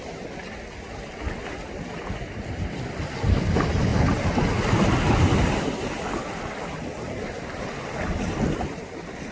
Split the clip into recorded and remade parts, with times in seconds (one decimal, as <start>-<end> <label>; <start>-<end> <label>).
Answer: 0.0-3.9 remade; 3.9-6.5 recorded; 6.5-9.3 remade